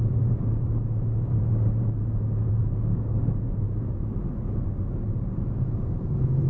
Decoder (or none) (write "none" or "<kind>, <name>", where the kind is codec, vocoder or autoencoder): vocoder, BigVGAN v2